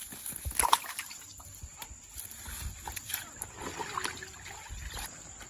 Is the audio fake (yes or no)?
no